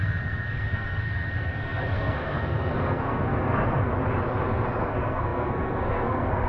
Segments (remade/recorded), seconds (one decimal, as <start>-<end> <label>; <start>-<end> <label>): 0.0-3.9 remade; 3.9-4.8 recorded; 4.8-6.5 remade